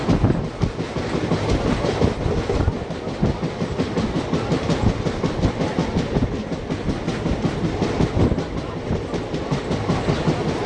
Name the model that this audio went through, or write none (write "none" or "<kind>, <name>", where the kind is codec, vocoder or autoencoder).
none